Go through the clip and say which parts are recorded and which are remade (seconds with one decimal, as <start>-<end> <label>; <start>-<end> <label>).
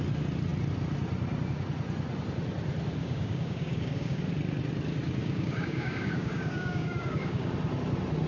0.0-3.0 recorded; 3.0-4.2 remade; 4.2-5.2 recorded; 5.2-7.5 remade; 7.5-8.3 recorded